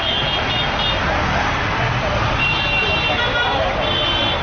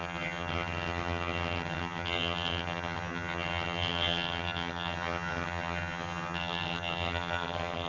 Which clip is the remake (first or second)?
second